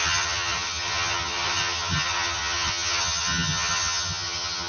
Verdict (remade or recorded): remade